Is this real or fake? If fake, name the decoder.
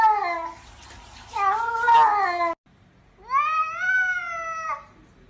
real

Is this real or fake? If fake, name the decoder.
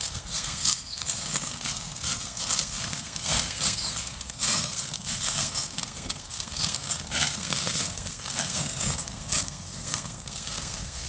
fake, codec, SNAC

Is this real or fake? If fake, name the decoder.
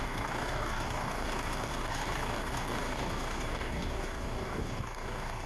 fake, codec, DAC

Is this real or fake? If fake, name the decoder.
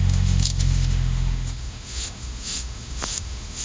fake, autoencoder, DAC-VAE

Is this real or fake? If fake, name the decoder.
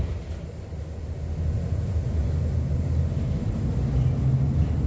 real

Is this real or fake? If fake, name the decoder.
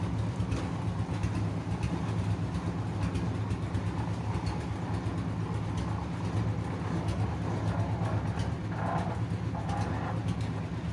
real